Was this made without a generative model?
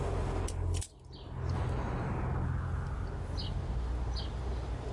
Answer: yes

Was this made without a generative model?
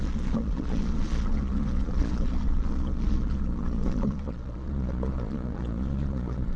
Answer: no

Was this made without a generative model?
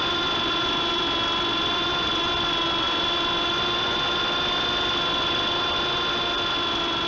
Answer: yes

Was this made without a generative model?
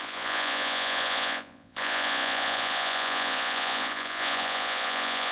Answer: no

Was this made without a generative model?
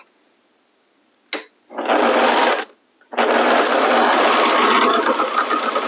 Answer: yes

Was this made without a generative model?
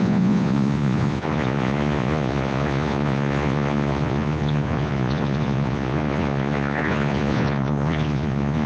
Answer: no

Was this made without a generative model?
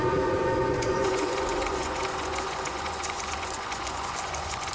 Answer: no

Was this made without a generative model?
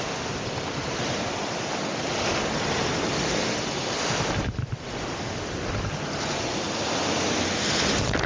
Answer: yes